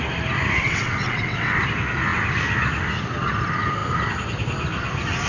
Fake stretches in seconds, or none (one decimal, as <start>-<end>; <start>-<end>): 0.6-1.6